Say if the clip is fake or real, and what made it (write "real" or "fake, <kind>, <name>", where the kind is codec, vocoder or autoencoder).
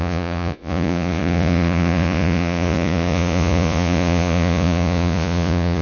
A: fake, vocoder, Vocos